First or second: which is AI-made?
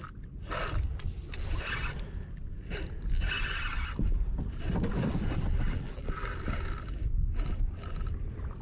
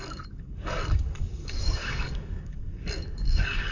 second